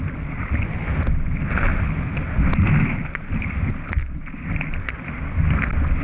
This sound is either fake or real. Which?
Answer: real